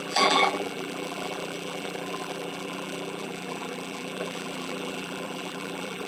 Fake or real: fake